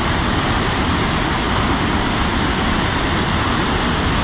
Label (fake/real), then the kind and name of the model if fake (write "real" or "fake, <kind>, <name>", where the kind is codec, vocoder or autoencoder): real